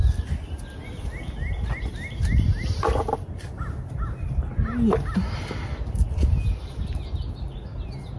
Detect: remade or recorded recorded